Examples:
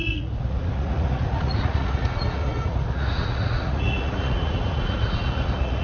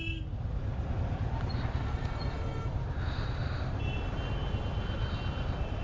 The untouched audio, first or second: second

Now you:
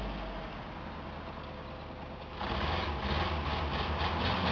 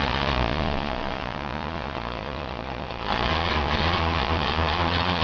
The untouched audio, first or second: first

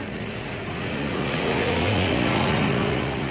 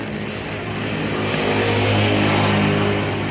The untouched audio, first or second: second